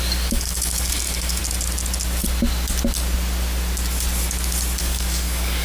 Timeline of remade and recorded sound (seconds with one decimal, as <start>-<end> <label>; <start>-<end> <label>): 0.0-1.4 remade; 1.4-4.8 recorded; 4.8-5.6 remade